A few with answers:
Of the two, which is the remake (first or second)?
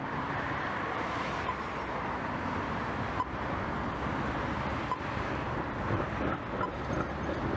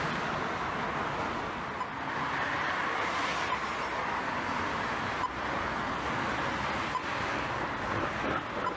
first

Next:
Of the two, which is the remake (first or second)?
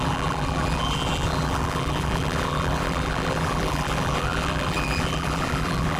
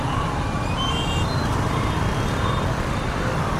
first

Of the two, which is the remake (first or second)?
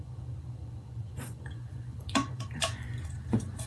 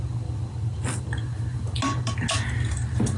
first